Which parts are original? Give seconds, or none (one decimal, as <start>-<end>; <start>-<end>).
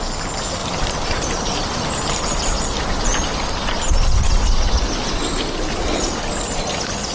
0.0-0.6; 4.1-7.1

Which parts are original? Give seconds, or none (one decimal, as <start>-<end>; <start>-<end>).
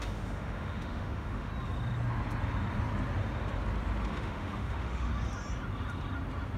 1.5-4.1; 5.1-6.6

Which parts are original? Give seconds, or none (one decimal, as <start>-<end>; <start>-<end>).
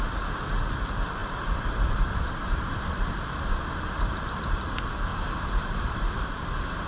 0.0-1.2; 4.2-5.1; 6.2-6.9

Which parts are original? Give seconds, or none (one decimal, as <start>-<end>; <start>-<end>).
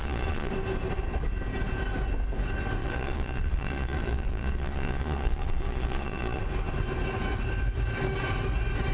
0.5-2.8; 6.4-8.9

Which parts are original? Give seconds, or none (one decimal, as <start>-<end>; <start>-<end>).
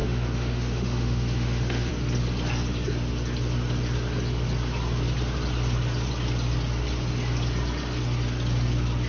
1.9-9.1